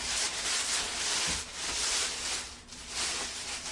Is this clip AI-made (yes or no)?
no